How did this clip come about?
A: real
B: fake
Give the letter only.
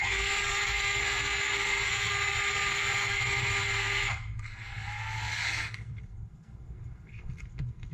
B